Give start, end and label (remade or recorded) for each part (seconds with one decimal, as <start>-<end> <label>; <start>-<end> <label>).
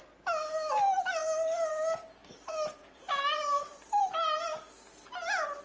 0.0-2.2 recorded; 2.2-4.2 remade; 4.2-5.6 recorded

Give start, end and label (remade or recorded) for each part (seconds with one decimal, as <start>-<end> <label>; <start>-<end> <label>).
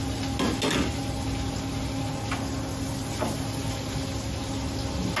0.0-5.2 recorded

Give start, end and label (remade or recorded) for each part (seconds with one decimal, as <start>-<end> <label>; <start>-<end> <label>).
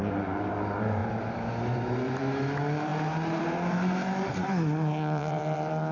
0.0-5.9 remade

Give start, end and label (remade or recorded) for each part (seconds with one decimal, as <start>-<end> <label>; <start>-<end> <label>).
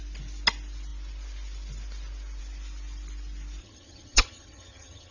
0.0-3.6 recorded; 3.6-5.1 remade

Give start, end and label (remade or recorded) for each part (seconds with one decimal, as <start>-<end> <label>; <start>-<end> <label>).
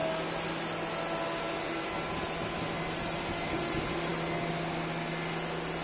0.0-5.8 recorded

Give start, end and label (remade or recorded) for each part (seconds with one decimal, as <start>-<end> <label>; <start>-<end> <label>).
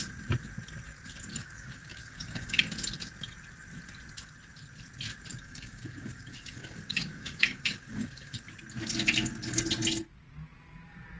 0.0-1.3 recorded; 1.3-2.6 remade; 2.6-5.3 recorded; 5.3-8.4 remade; 8.4-11.2 recorded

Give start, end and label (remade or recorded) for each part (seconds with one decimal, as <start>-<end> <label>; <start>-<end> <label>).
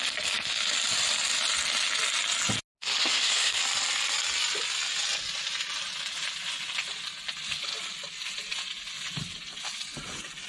0.0-3.0 recorded; 3.0-3.6 remade; 3.6-10.5 recorded